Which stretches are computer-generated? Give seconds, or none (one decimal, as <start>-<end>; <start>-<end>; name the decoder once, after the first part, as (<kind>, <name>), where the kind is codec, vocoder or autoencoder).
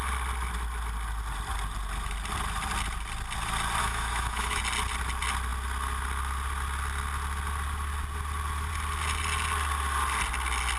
3.8-4.6 (autoencoder, DAC-VAE)